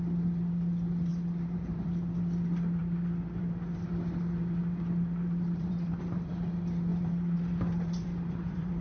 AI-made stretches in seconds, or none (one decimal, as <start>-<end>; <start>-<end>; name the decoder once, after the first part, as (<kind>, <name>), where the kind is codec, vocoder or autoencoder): 1.1-1.9 (vocoder, BigVGAN v2); 4.6-6.0; 6.9-8.8